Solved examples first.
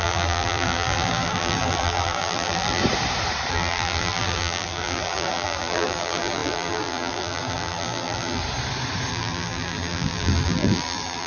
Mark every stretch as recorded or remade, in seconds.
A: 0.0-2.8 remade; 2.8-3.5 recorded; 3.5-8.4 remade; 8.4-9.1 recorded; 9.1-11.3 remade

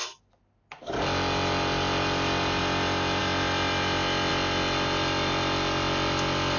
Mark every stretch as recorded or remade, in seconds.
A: 0.0-6.6 recorded

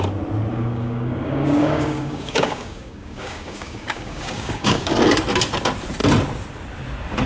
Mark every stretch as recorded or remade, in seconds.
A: 0.0-0.5 recorded; 0.5-4.9 remade; 4.9-7.3 recorded